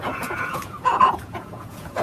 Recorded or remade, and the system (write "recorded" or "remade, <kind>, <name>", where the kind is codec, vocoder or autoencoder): remade, vocoder, Vocos